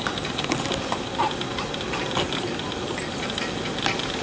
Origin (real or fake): real